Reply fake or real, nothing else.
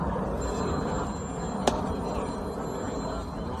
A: real